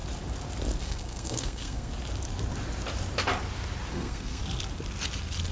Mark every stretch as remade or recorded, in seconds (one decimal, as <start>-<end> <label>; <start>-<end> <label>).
0.0-0.8 recorded; 0.8-1.9 remade; 1.9-3.9 recorded; 3.9-4.4 remade; 4.4-5.5 recorded